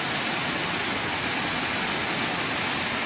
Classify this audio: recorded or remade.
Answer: recorded